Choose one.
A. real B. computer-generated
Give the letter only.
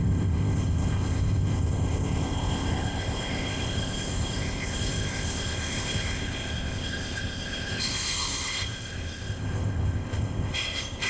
B